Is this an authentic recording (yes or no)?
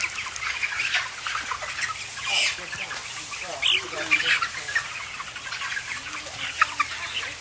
yes